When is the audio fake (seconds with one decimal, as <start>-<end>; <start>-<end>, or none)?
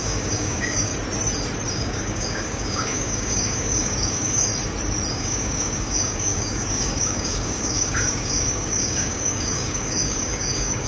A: 0.0-0.9; 1.7-4.5; 5.1-10.9